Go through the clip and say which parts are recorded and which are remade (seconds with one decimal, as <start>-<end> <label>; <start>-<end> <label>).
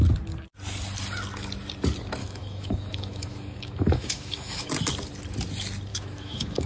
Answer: 0.0-2.2 recorded; 2.2-4.7 remade; 4.7-5.9 recorded; 5.9-6.7 remade